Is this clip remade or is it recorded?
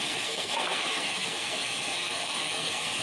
remade